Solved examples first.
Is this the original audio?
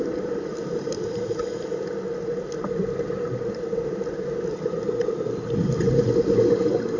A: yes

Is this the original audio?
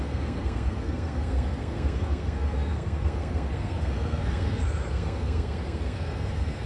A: no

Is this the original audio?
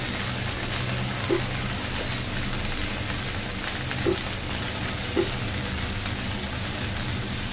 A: yes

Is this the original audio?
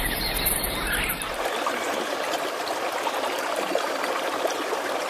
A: yes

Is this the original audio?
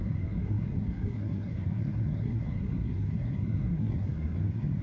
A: no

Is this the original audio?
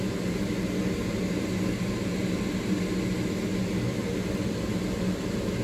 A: yes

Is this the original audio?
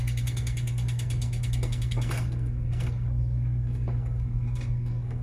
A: no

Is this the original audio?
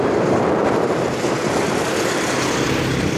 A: yes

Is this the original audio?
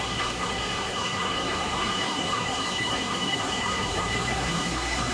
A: no